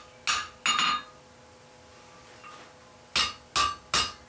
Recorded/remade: recorded